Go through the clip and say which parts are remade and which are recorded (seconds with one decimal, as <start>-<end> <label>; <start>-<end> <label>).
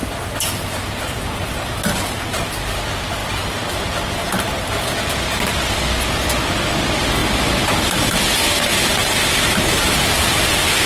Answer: 0.0-10.9 recorded